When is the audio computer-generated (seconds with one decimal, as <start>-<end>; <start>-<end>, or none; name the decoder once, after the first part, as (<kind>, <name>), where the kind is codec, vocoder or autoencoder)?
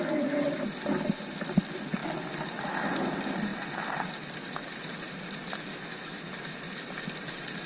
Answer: 5.7-6.3 (autoencoder, DAC-VAE)